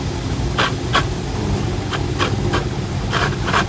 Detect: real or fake real